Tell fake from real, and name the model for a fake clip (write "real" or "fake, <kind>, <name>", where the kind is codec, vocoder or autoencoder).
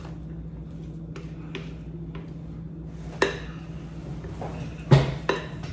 real